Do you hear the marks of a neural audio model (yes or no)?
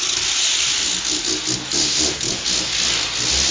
no